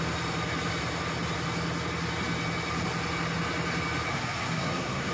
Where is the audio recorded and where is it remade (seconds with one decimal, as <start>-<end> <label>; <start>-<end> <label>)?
0.0-4.1 recorded; 4.1-5.1 remade